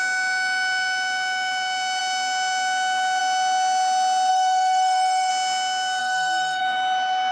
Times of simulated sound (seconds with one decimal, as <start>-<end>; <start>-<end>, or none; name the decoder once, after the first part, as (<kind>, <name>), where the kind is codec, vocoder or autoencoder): 4.3-5.3 (codec, SNAC); 6.0-6.6